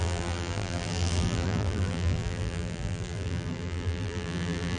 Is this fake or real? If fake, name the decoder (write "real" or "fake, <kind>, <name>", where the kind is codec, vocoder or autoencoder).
fake, vocoder, BigVGAN v2